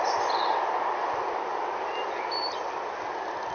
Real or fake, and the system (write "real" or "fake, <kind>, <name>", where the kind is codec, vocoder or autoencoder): real